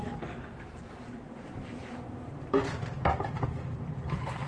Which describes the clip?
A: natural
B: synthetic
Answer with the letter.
B